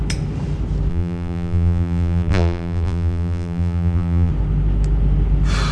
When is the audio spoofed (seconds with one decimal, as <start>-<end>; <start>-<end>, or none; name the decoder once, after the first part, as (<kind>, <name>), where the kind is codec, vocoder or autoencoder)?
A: 0.9-4.3 (vocoder, BigVGAN v2)